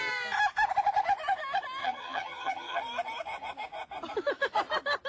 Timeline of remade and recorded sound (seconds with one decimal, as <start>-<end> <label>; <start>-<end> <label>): 0.0-1.8 recorded; 1.8-2.8 remade; 2.8-5.1 recorded